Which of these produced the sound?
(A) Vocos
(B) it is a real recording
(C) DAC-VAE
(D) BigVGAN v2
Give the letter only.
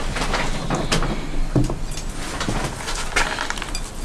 B